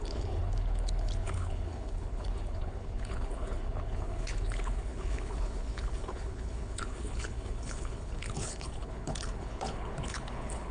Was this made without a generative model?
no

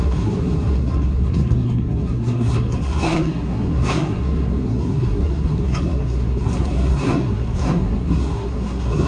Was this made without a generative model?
no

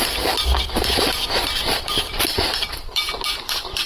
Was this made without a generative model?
no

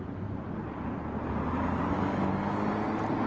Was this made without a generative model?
yes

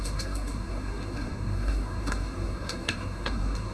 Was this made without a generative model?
no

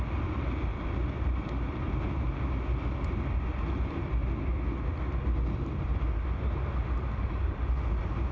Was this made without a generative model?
yes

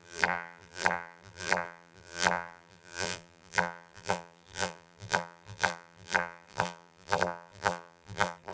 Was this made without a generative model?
no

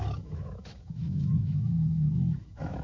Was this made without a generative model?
no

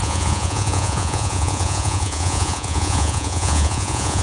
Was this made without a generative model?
no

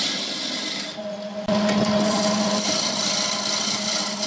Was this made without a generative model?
no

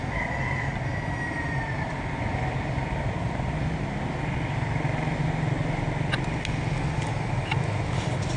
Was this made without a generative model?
yes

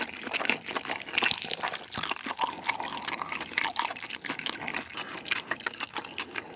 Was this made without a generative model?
yes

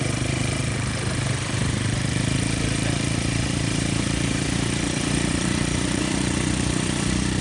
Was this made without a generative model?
no